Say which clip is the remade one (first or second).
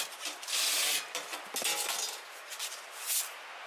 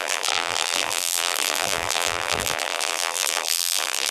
second